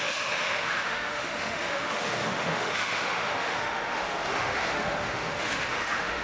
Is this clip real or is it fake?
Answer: fake